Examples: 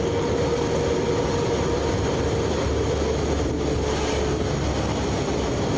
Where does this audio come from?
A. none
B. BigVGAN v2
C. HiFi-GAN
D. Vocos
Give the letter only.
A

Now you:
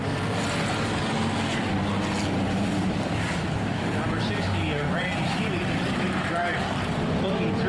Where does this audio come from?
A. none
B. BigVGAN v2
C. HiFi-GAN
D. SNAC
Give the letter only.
A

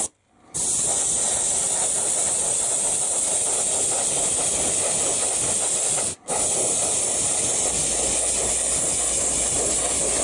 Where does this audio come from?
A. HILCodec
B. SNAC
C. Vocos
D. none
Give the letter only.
D